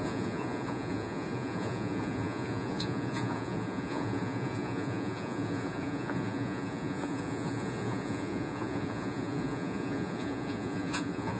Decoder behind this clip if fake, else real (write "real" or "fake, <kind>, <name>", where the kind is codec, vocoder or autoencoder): fake, vocoder, Vocos